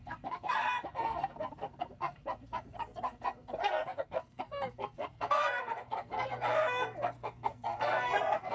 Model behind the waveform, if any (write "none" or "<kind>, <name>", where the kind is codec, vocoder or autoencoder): codec, SNAC